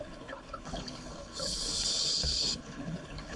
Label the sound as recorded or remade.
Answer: remade